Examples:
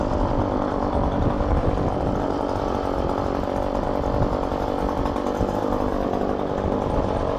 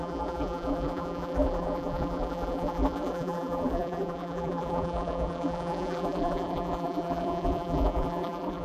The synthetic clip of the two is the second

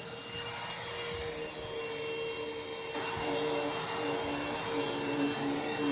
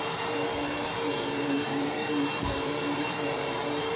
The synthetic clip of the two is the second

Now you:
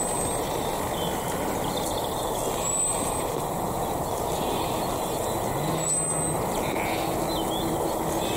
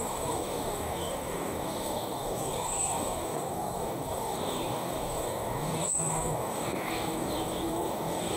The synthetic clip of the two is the second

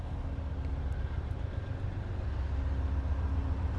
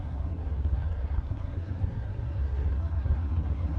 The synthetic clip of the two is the second